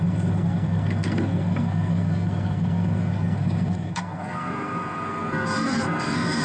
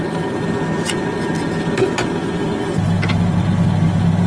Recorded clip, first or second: second